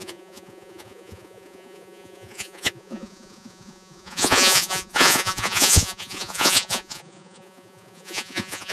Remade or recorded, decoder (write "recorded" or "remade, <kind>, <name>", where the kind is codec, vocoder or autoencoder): remade, vocoder, Vocos